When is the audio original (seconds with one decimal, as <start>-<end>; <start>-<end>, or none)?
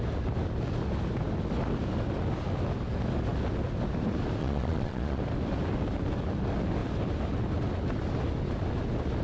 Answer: 0.0-4.4; 5.2-9.2